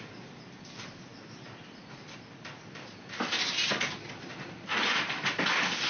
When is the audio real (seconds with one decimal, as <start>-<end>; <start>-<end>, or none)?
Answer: 0.0-5.9